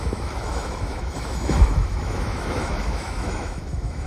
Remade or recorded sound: remade